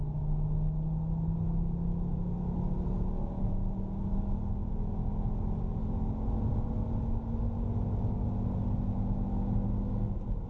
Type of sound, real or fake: real